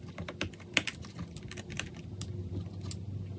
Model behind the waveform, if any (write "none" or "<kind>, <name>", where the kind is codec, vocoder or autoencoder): none